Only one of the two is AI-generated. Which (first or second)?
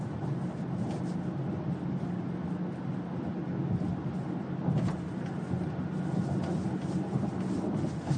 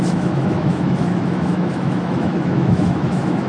second